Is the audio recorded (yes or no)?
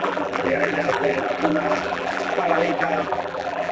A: no